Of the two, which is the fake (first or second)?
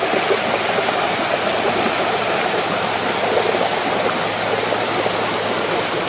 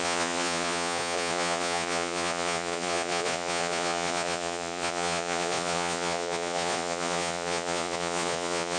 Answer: second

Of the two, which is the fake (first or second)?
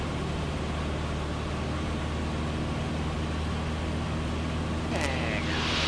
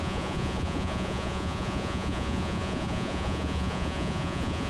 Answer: second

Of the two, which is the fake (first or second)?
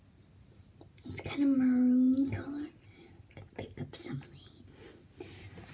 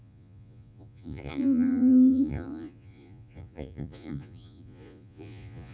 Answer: second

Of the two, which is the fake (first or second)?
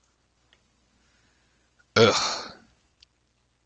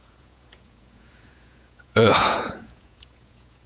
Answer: second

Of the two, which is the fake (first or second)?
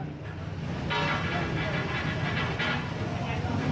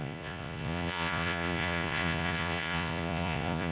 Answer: second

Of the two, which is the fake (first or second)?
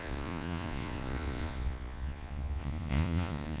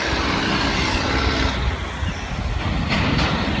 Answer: first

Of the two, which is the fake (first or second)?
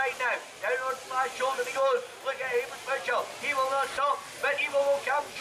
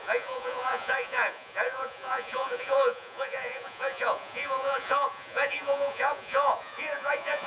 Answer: second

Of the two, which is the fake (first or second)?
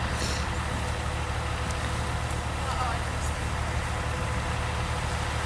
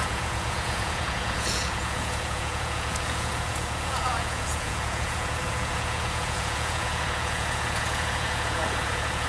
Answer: second